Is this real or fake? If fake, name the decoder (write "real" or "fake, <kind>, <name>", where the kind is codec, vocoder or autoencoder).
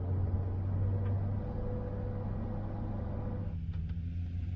real